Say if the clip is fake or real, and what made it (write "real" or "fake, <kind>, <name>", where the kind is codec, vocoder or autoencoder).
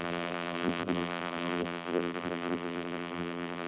fake, vocoder, BigVGAN v2